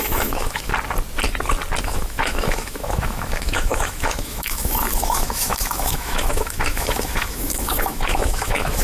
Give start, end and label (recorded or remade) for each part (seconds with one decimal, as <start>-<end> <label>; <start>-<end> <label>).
0.0-0.7 remade; 0.7-1.8 recorded; 1.8-8.8 remade